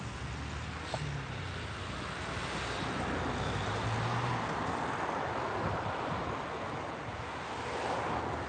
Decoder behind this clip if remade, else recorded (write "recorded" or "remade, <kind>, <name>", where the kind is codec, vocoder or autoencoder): recorded